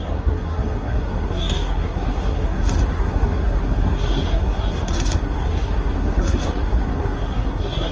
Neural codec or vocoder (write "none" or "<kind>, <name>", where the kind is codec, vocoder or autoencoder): codec, SNAC